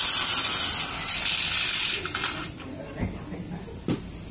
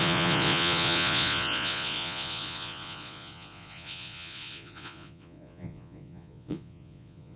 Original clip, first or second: first